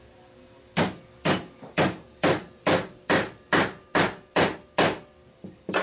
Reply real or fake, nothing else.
real